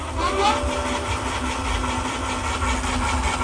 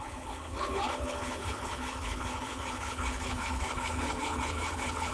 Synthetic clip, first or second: second